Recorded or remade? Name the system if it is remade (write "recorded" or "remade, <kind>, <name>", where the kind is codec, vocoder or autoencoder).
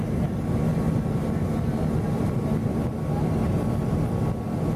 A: recorded